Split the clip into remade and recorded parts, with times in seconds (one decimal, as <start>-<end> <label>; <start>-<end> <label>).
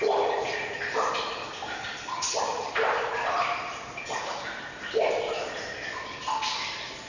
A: 0.0-2.1 recorded; 2.1-2.7 remade; 2.7-7.1 recorded